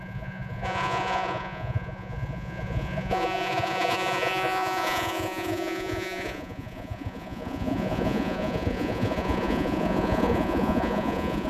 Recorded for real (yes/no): no